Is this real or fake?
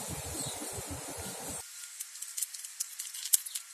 real